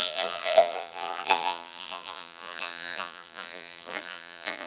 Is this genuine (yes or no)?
no